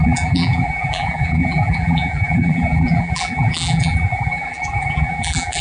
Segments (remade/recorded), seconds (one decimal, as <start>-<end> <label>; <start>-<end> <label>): 0.0-5.6 remade